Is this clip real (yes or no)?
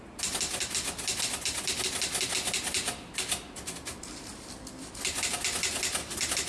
yes